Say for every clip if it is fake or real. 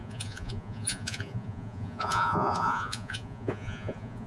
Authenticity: fake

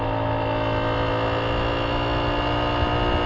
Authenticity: real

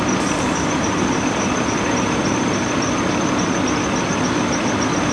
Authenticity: real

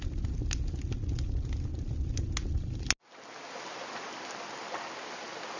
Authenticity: real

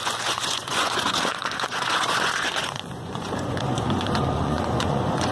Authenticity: fake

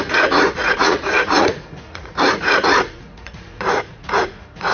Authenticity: fake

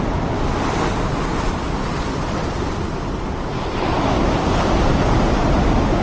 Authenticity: real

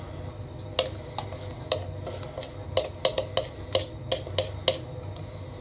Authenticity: real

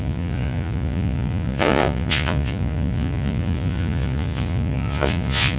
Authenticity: fake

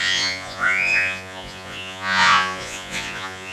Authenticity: fake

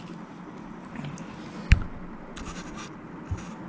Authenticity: real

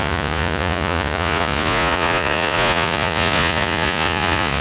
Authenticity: fake